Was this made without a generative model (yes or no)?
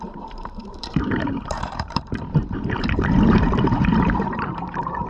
no